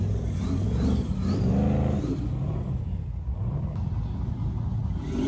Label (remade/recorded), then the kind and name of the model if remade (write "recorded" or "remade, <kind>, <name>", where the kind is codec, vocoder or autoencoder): recorded